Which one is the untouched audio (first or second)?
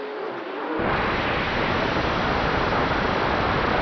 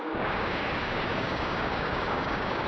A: first